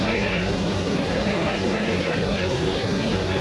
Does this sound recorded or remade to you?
remade